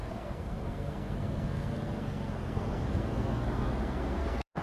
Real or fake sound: fake